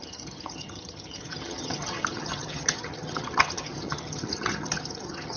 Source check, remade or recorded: remade